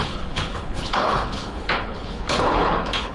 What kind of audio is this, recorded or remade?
remade